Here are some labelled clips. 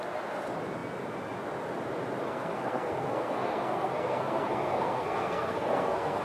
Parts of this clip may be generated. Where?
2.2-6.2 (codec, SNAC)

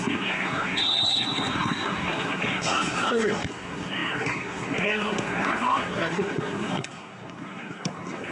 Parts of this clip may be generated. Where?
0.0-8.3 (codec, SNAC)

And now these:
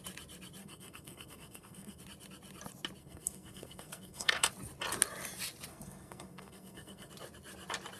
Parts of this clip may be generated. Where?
0.6-2.0 (codec, SNAC); 3.0-4.5; 5.7-7.1

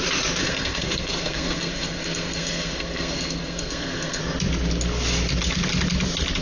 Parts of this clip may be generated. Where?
0.4-4.2 (codec, SNAC)

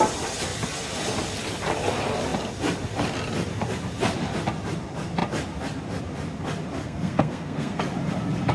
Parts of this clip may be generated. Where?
6.8-7.8 (codec, SNAC)

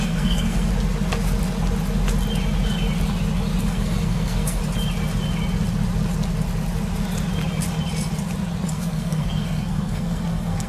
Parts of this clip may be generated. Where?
0.0-0.7 (codec, SNAC); 3.6-4.6; 8.7-10.7

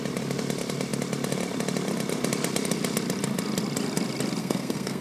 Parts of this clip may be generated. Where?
4.4-5.0 (codec, SNAC)